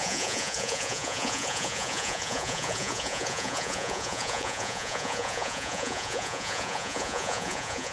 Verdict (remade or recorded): remade